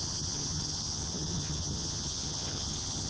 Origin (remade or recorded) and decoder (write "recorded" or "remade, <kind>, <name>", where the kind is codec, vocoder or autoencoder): remade, vocoder, HiFi-GAN